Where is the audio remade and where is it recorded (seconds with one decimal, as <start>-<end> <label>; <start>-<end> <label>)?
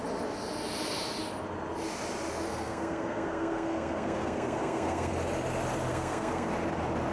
0.0-2.5 recorded; 2.5-5.1 remade; 5.1-5.9 recorded; 5.9-6.5 remade; 6.5-7.1 recorded